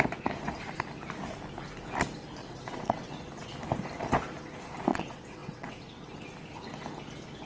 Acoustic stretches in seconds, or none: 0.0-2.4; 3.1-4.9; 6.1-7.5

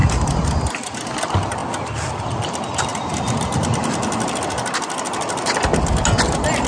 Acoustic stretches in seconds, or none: 0.0-6.7

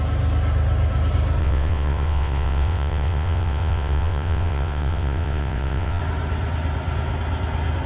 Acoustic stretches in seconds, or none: 0.0-1.4; 6.0-7.9

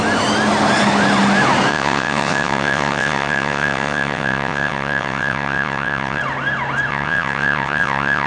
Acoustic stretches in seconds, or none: 0.0-1.7; 6.2-6.9

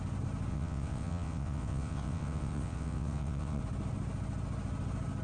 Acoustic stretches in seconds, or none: 0.0-0.5; 3.6-5.2

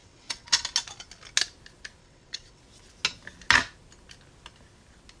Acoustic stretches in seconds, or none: 0.5-2.0; 2.6-5.2

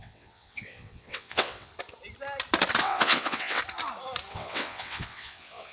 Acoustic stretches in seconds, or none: 1.7-2.8; 3.6-4.3

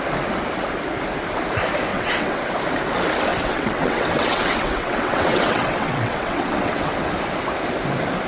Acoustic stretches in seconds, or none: 0.0-1.9; 2.5-3.3; 6.9-8.3